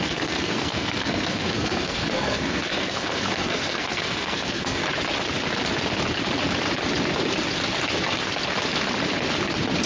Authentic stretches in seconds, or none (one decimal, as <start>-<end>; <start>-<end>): 4.8-9.9